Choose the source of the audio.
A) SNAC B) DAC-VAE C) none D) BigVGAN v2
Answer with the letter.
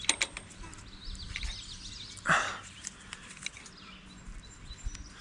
C